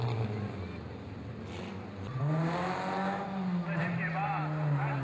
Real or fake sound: real